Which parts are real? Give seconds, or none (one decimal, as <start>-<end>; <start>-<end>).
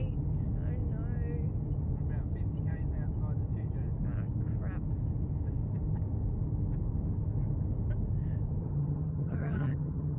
0.0-8.6